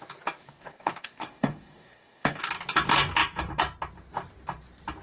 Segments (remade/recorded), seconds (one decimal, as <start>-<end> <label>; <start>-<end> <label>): 0.0-0.4 recorded; 0.4-2.4 remade; 2.4-5.0 recorded